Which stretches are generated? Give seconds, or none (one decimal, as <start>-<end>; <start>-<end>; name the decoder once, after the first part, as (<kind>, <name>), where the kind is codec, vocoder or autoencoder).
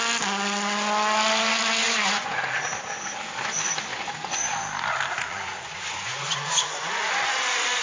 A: 1.8-2.4 (vocoder, Vocos); 3.9-4.4; 5.3-7.1